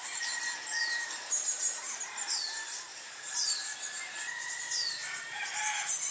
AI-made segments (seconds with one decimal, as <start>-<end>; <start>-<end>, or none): 0.8-2.0; 2.9-4.1; 5.0-5.6